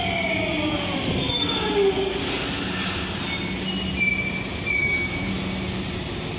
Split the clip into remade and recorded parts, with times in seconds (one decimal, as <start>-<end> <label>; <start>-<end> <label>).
0.0-4.8 recorded; 4.8-5.3 remade; 5.3-6.4 recorded